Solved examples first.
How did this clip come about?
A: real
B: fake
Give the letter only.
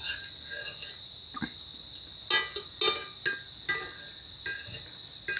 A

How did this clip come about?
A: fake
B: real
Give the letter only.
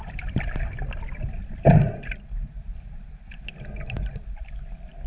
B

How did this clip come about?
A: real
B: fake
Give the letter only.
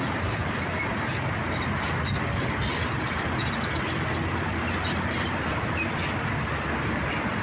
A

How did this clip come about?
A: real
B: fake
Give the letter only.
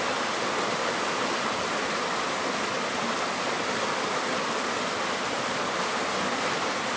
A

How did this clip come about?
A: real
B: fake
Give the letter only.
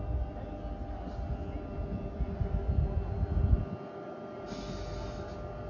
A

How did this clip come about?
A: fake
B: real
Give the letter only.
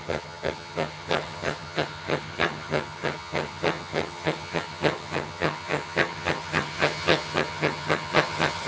A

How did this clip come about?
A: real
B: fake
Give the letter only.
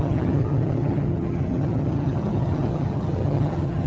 B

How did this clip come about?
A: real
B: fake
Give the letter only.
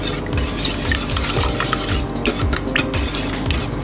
A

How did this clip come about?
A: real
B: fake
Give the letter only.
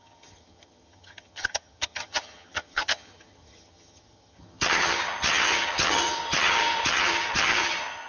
B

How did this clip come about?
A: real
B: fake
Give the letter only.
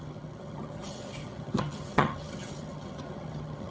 B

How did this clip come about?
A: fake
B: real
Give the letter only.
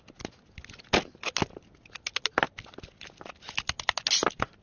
B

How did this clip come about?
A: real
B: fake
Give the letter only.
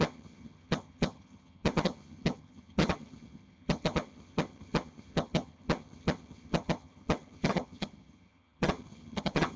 B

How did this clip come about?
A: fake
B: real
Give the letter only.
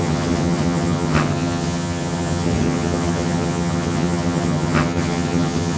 A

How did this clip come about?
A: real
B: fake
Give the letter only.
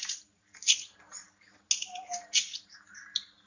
A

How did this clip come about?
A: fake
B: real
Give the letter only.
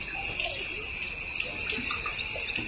B